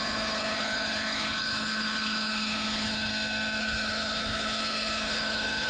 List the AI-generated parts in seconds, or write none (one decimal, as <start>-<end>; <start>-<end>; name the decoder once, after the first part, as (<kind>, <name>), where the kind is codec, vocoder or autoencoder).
0.0-3.1 (codec, HILCodec); 3.6-5.7